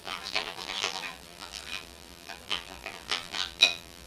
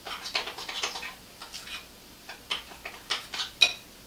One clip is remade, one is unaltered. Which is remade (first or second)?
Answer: first